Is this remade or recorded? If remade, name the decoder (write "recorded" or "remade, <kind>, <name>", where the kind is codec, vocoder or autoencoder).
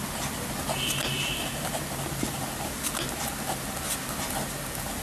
recorded